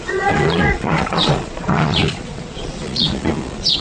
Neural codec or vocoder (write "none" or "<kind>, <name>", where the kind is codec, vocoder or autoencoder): vocoder, Vocos